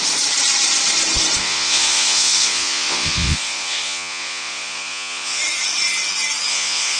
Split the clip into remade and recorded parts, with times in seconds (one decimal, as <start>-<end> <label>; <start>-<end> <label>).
0.0-1.4 recorded; 1.4-5.4 remade; 5.4-6.5 recorded; 6.5-7.0 remade